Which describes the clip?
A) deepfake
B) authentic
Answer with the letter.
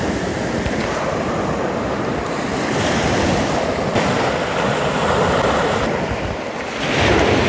B